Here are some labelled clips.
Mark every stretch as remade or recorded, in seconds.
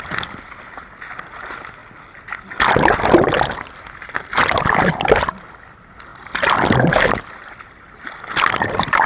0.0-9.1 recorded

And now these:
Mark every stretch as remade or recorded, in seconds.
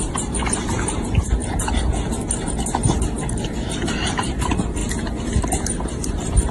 0.0-1.4 remade; 1.4-3.7 recorded; 3.7-4.8 remade; 4.8-6.1 recorded; 6.1-6.5 remade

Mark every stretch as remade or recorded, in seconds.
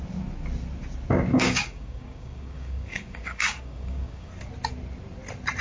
0.0-1.3 recorded; 1.3-4.3 remade; 4.3-5.6 recorded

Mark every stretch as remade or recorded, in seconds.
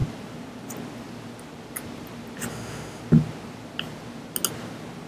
0.0-2.5 recorded; 2.5-3.0 remade; 3.0-5.1 recorded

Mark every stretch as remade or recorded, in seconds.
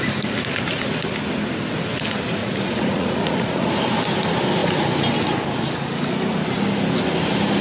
0.0-2.4 recorded; 2.4-3.7 remade; 3.7-7.6 recorded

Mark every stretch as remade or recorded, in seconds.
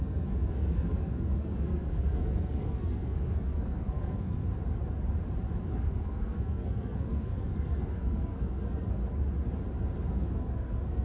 0.0-4.5 remade; 4.5-5.7 recorded; 5.7-9.0 remade; 9.0-10.1 recorded; 10.1-11.0 remade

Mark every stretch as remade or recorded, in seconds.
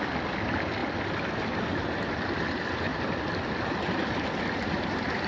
0.0-5.3 recorded